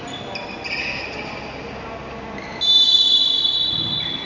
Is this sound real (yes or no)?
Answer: yes